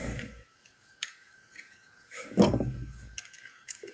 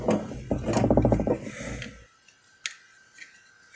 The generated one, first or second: first